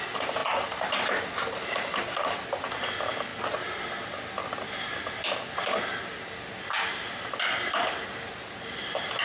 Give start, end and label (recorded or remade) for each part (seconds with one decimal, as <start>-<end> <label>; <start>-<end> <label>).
0.0-6.9 recorded; 6.9-8.3 remade; 8.3-9.2 recorded

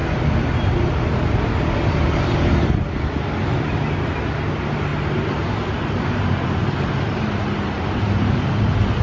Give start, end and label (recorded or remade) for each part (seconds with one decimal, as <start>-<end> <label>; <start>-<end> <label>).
0.0-9.0 recorded

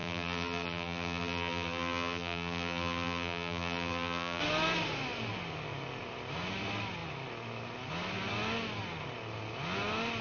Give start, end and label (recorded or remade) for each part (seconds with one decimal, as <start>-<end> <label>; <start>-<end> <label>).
0.0-4.4 remade; 4.4-10.2 recorded

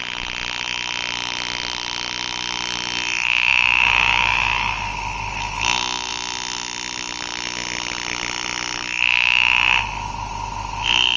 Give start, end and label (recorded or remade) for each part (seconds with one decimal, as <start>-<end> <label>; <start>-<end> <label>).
0.0-11.2 recorded

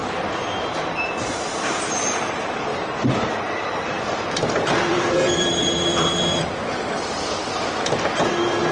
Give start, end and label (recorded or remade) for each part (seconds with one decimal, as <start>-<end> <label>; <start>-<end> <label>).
0.0-2.7 recorded; 2.7-7.8 remade; 7.8-8.7 recorded

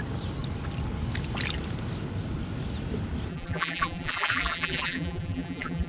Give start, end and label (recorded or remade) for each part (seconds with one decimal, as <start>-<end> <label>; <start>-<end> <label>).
0.0-3.3 recorded; 3.3-5.9 remade

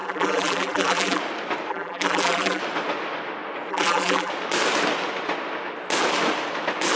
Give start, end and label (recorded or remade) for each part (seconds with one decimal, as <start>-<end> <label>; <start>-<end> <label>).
0.0-1.2 remade; 1.2-1.7 recorded; 1.7-2.6 remade; 2.6-3.7 recorded; 3.7-4.3 remade; 4.3-7.0 recorded

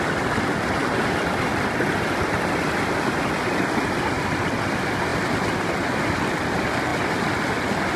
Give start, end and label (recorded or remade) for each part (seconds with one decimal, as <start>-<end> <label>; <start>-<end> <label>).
0.0-8.0 recorded